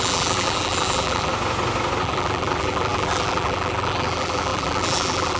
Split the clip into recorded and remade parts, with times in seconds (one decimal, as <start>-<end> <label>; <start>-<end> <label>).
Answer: 0.0-1.3 remade; 1.3-2.0 recorded; 2.0-5.4 remade